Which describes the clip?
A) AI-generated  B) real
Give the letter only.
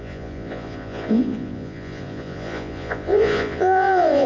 A